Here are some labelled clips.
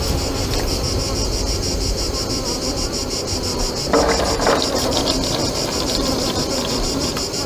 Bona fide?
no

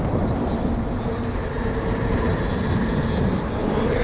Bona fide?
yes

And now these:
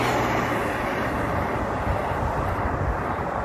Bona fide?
yes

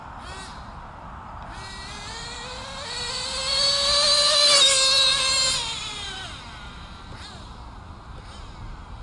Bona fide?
yes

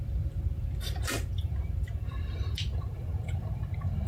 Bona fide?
no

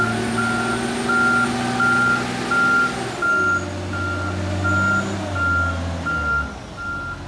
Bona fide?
yes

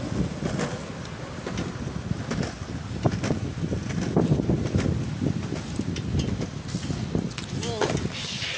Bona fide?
yes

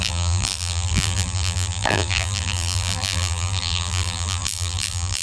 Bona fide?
no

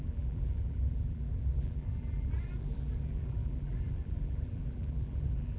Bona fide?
no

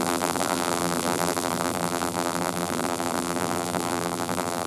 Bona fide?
no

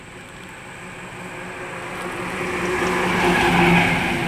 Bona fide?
yes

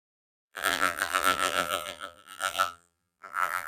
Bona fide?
no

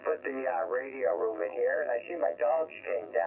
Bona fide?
no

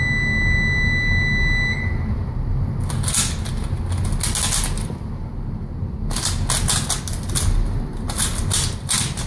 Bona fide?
yes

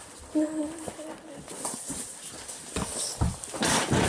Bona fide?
yes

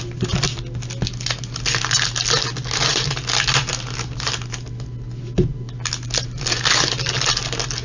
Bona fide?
yes